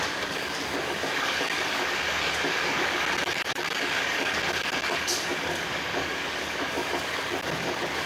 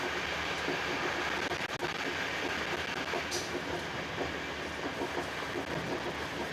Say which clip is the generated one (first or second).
first